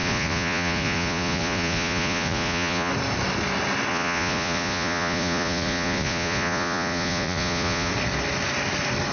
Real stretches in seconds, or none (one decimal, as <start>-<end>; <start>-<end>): 2.9-3.9; 7.9-9.1